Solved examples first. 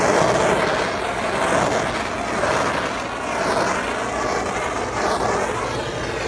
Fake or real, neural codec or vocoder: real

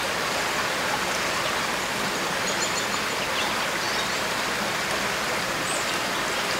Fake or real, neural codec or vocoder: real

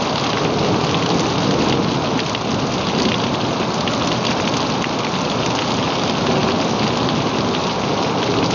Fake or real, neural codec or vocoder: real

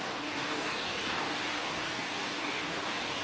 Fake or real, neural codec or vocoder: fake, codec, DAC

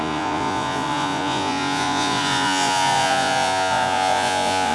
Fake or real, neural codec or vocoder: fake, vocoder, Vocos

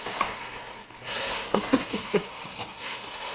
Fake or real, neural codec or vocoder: fake, codec, SNAC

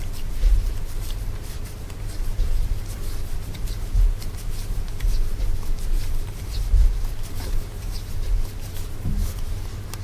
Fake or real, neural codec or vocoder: fake, vocoder, BigVGAN v2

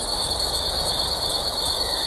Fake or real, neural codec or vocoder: fake, autoencoder, DAC-VAE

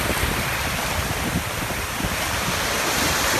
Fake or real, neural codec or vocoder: real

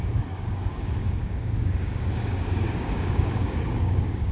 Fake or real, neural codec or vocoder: fake, codec, DAC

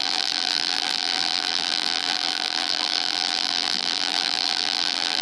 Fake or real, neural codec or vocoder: fake, vocoder, BigVGAN v2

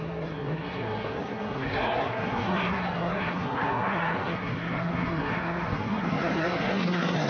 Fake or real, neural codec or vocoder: fake, codec, SNAC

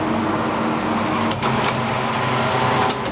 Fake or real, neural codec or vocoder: real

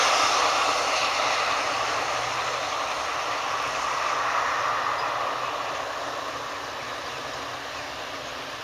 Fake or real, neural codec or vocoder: real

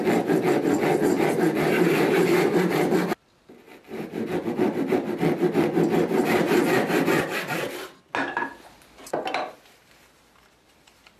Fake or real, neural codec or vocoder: real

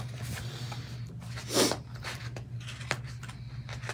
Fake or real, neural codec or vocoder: real